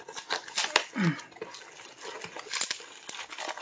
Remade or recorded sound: recorded